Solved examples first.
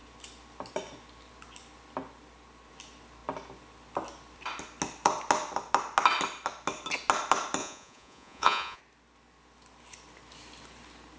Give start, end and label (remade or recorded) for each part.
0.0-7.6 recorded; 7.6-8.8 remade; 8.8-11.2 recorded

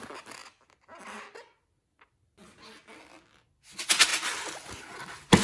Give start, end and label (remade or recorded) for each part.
0.0-5.4 recorded

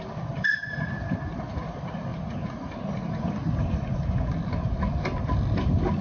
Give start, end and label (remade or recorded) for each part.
0.0-6.0 recorded

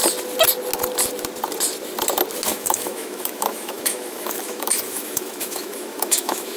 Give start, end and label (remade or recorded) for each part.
0.0-2.5 recorded; 2.5-6.6 remade

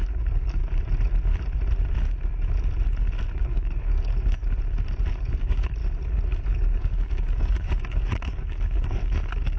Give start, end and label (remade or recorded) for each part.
0.0-0.6 remade; 0.6-3.4 recorded; 3.4-4.4 remade; 4.4-5.2 recorded; 5.2-5.8 remade; 5.8-6.4 recorded; 6.4-9.6 remade

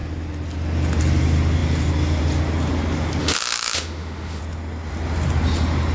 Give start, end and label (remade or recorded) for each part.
0.0-3.2 recorded; 3.2-4.4 remade; 4.4-5.9 recorded

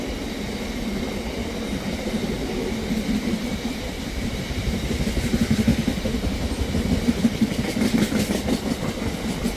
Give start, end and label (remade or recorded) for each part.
0.0-1.4 recorded; 1.4-2.2 remade; 2.2-3.5 recorded; 3.5-5.0 remade; 5.0-9.6 recorded